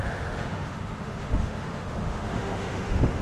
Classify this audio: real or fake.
fake